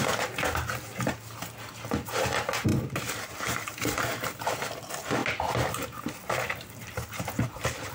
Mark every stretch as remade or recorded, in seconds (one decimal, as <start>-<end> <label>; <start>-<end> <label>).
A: 0.0-7.9 recorded